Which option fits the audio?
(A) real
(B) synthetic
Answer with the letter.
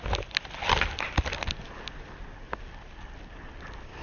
A